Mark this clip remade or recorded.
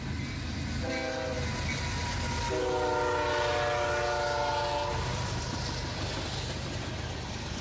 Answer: recorded